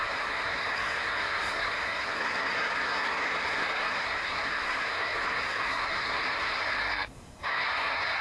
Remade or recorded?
remade